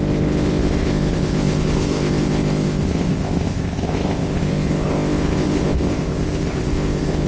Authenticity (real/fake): fake